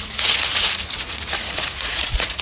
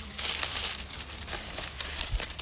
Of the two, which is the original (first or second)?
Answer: second